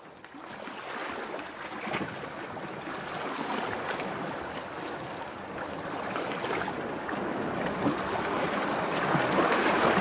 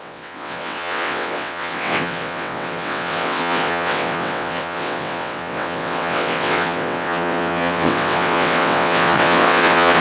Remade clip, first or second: second